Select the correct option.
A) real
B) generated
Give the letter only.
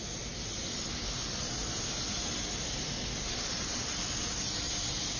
A